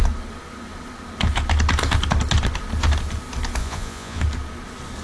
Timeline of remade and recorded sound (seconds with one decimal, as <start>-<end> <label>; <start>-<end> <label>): 0.0-3.6 recorded; 3.6-4.2 remade; 4.2-5.0 recorded